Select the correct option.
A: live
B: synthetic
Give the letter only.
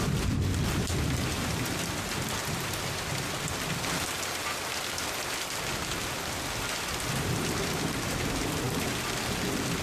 A